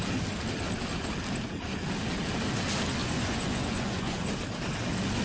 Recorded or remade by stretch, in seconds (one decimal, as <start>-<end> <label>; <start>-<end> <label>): 0.0-3.0 recorded; 3.0-4.3 remade; 4.3-5.2 recorded